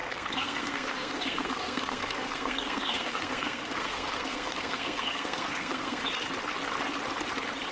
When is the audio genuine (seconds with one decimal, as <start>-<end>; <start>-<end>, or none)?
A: 6.0-7.7